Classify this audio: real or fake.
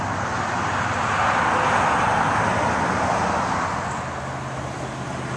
real